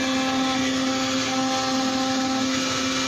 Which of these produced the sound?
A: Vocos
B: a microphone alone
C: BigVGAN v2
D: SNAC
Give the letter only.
B